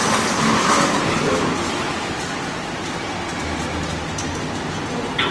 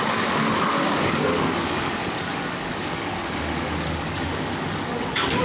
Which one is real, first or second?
first